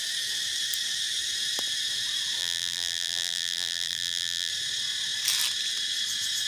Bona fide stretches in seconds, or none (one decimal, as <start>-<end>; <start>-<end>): 0.0-2.4; 4.5-6.5